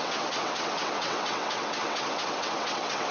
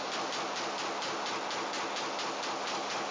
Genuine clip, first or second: second